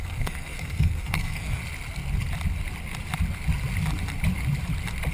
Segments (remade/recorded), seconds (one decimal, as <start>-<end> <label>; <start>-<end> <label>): 0.0-1.6 remade; 1.6-5.1 recorded